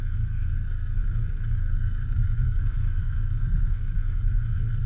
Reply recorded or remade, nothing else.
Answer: remade